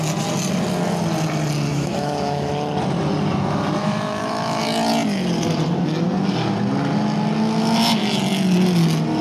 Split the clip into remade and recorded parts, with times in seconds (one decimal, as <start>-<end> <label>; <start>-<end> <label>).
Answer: 0.0-1.7 recorded; 1.7-2.5 remade; 2.5-3.8 recorded; 3.8-4.6 remade; 4.6-9.2 recorded